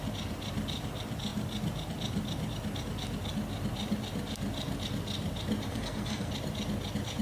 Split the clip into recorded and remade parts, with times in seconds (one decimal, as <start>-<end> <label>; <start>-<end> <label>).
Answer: 0.0-5.7 recorded; 5.7-6.3 remade; 6.3-7.2 recorded